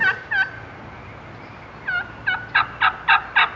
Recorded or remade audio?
recorded